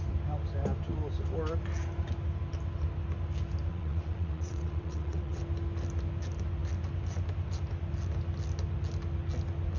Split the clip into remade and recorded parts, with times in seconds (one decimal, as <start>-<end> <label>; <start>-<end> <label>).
0.0-3.7 recorded; 3.7-5.4 remade; 5.4-9.8 recorded

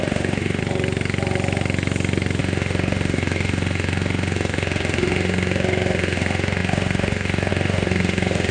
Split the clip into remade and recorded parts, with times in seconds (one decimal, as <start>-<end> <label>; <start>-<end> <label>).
0.0-0.6 remade; 0.6-2.4 recorded; 2.4-8.5 remade

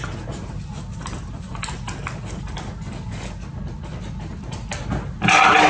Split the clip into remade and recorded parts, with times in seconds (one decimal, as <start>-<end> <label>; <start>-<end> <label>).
0.0-5.7 recorded

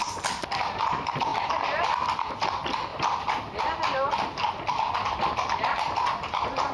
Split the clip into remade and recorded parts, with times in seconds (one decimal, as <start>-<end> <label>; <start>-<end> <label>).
0.0-6.7 recorded

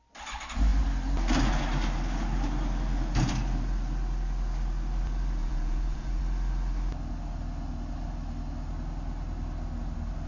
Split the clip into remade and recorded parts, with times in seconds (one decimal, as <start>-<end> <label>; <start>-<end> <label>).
0.0-5.4 recorded; 5.4-6.2 remade; 6.2-10.3 recorded

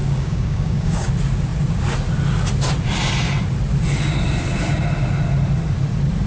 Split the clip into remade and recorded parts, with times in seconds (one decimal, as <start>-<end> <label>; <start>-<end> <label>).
0.0-1.1 remade; 1.1-6.3 recorded

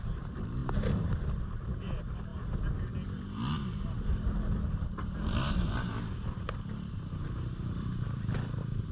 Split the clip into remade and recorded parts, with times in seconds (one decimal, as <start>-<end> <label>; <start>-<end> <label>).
0.0-0.6 remade; 0.6-1.2 recorded; 1.2-2.3 remade; 2.3-7.4 recorded; 7.4-8.9 remade